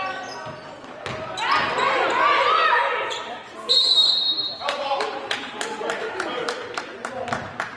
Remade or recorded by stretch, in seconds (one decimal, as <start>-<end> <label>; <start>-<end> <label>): 0.0-3.7 recorded; 3.7-5.5 remade; 5.5-6.0 recorded; 6.0-6.8 remade; 6.8-7.8 recorded